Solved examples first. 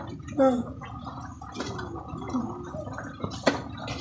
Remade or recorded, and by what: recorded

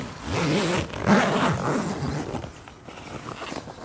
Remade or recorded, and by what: recorded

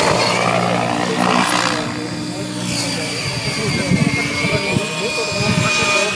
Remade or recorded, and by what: recorded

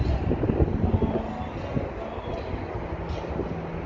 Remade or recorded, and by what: recorded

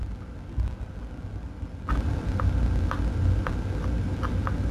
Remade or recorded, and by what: recorded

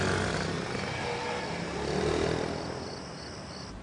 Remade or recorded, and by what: recorded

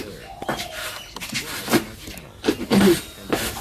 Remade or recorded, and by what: recorded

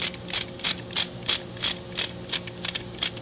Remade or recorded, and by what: recorded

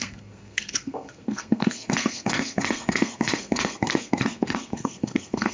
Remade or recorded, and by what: remade, codec, SNAC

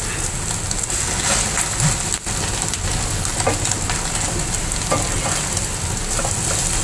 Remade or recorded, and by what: recorded